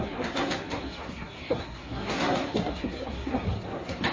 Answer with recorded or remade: remade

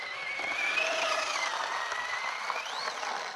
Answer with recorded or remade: recorded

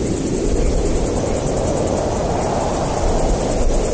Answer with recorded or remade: recorded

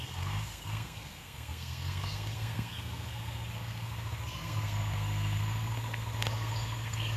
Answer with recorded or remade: remade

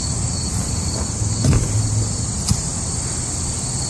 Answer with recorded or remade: recorded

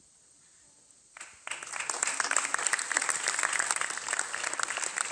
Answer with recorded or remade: recorded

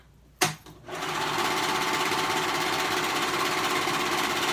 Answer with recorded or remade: recorded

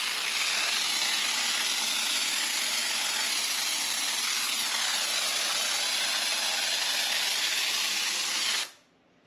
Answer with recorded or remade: recorded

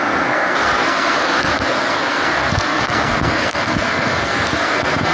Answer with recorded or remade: remade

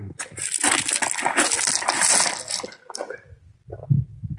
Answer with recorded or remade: recorded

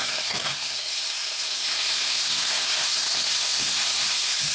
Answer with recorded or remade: remade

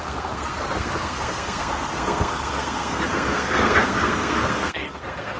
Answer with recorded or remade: remade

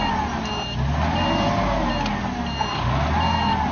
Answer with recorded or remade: recorded